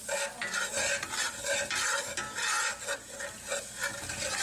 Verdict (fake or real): real